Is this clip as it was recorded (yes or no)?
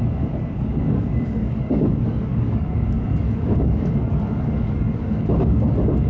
no